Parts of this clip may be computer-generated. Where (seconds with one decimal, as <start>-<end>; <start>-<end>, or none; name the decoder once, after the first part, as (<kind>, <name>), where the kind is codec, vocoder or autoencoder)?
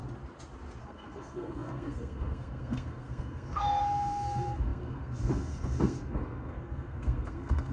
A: 0.8-7.7 (codec, SNAC)